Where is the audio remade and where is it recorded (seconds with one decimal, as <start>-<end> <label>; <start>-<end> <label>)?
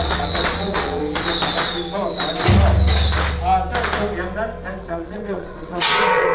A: 0.0-1.0 remade; 1.0-4.8 recorded; 4.8-6.3 remade